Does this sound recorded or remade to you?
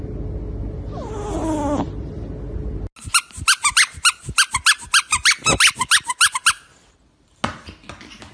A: recorded